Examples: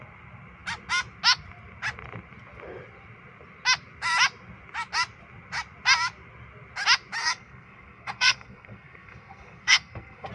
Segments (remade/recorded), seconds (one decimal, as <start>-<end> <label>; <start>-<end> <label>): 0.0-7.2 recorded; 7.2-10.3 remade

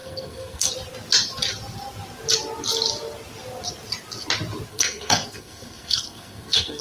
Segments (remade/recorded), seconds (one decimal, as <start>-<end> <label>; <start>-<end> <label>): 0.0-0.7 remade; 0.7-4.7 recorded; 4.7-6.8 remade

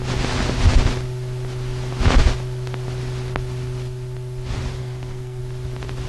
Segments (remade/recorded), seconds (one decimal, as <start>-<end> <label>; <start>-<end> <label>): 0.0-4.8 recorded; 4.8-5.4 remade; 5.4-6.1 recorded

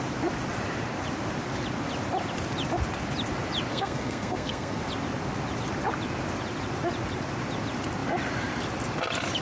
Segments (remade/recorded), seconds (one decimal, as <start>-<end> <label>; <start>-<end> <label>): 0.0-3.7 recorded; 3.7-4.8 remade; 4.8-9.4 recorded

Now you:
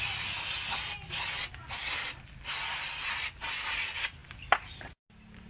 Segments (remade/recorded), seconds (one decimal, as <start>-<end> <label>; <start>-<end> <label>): 0.0-5.5 recorded

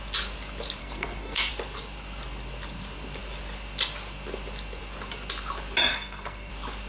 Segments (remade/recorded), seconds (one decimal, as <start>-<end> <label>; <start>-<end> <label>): 0.0-0.8 recorded; 0.8-1.5 remade; 1.5-5.9 recorded; 5.9-6.5 remade; 6.5-6.9 recorded

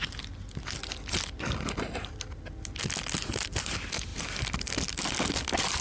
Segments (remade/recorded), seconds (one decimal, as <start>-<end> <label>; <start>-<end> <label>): 0.0-5.8 recorded

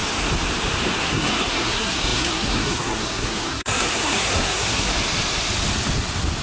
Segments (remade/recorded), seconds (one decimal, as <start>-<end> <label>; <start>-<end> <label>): 0.0-1.0 recorded; 1.0-4.9 remade; 4.9-6.4 recorded